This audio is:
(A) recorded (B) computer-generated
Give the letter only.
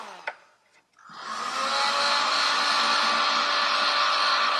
A